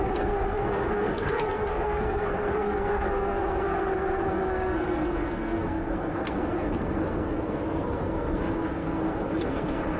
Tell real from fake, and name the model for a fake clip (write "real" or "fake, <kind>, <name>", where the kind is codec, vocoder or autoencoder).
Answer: fake, codec, SNAC